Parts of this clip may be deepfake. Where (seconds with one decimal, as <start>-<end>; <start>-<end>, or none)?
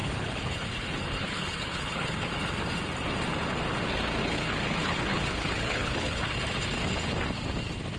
0.0-2.3; 4.2-6.2